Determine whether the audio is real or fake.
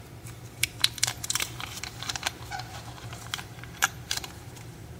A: fake